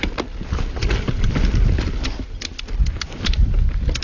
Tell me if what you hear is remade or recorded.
recorded